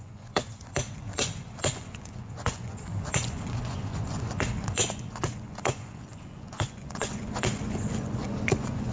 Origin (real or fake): fake